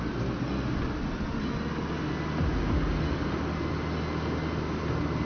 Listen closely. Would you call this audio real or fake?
real